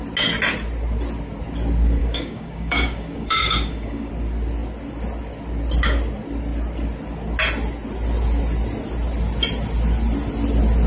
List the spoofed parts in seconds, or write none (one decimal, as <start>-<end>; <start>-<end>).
2.0-4.1